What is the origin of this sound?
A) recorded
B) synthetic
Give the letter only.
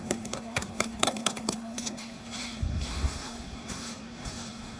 B